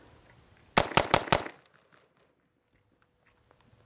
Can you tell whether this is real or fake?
real